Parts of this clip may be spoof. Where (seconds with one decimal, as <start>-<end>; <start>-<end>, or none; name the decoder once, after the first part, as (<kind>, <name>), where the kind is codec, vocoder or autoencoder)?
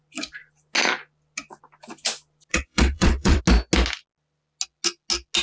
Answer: 2.5-3.4 (vocoder, WaveNeXt)